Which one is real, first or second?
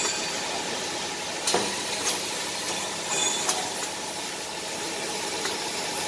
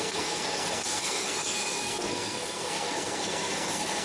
first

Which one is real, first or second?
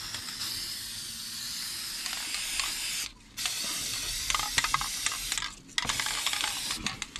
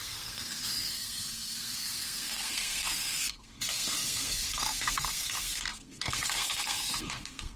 first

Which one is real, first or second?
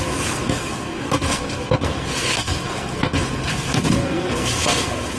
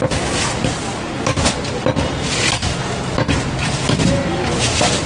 second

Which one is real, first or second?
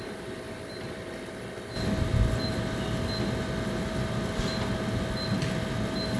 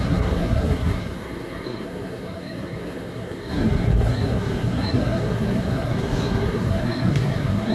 first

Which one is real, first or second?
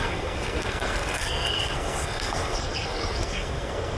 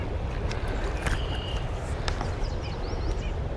second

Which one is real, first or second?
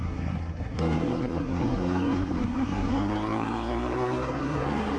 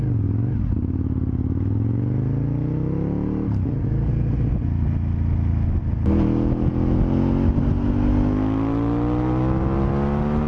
second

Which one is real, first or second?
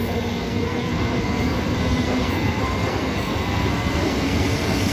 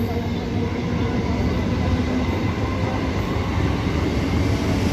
second